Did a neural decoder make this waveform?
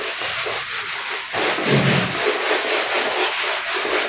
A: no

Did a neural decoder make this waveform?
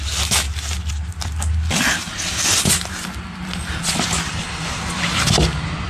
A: no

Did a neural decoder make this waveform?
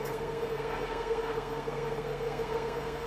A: yes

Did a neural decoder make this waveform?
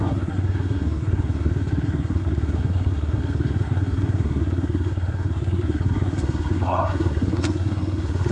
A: yes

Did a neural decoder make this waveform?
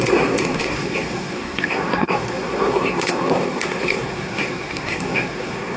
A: yes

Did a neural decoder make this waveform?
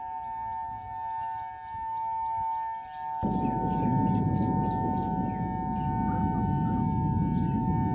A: no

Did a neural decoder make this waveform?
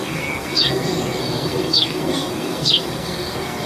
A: yes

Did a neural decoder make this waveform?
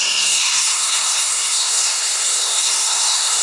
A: yes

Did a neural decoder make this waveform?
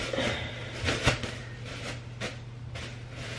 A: no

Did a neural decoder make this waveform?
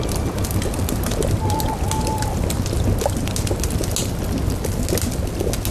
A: no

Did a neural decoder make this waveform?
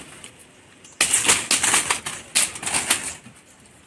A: no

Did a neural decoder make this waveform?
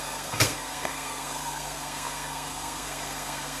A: yes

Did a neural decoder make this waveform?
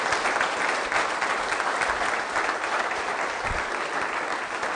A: no